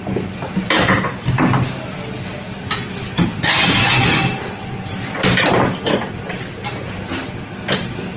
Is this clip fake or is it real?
real